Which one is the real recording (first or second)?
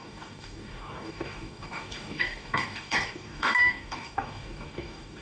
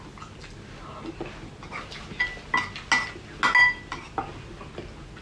second